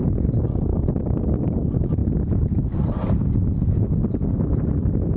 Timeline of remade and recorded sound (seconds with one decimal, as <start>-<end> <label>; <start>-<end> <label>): 0.0-5.2 recorded